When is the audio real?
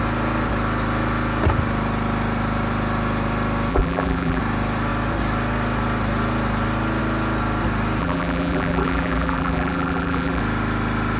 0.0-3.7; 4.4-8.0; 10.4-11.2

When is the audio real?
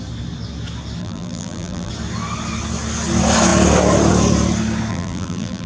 0.0-1.0; 1.9-4.9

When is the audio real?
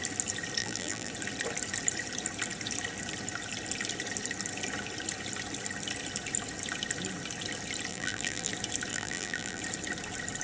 0.0-0.6; 1.1-7.9; 8.5-8.9; 9.6-10.4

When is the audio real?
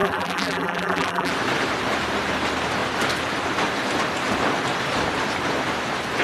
1.3-6.2